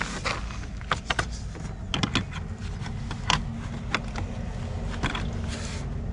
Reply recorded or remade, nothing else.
recorded